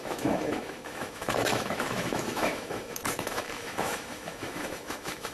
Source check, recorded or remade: remade